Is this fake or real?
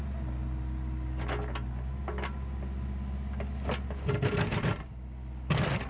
real